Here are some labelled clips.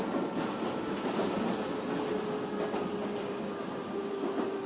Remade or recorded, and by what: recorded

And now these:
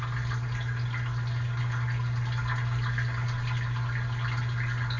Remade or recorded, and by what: recorded